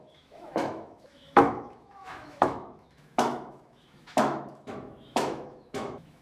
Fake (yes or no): yes